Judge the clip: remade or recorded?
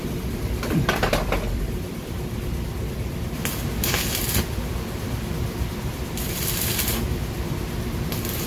remade